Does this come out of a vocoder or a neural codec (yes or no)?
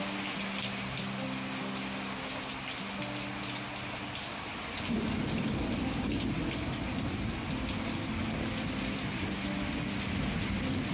no